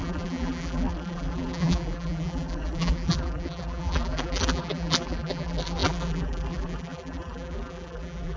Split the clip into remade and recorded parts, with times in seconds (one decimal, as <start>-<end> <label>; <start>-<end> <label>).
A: 0.0-8.4 remade